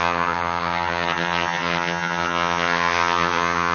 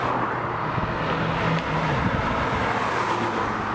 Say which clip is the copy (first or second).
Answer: first